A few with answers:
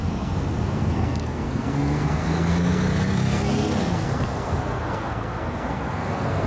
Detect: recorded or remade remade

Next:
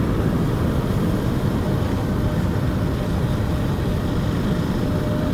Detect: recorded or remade recorded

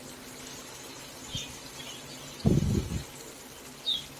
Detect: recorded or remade recorded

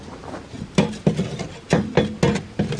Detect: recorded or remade recorded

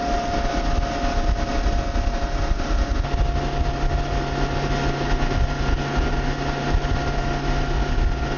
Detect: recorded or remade recorded